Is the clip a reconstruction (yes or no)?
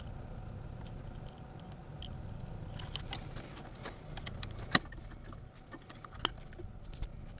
no